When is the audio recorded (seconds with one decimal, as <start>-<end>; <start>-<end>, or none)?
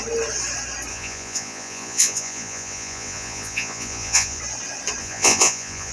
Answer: 0.0-0.9; 4.4-5.0